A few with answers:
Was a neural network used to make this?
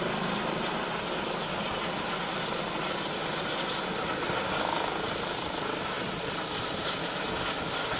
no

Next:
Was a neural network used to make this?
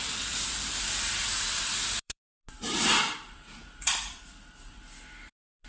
yes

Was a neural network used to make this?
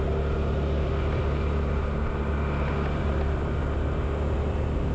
no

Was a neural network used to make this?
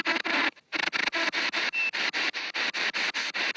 no